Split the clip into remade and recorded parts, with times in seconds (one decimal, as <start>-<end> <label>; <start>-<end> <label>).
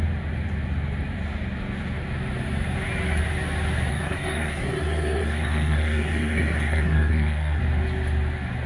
0.0-3.9 recorded; 3.9-7.6 remade; 7.6-8.7 recorded